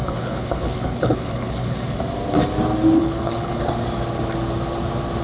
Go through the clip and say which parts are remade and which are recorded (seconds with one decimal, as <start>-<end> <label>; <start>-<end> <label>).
0.0-2.0 remade; 2.0-3.0 recorded; 3.0-3.6 remade; 3.6-5.2 recorded